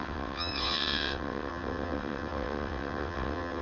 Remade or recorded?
remade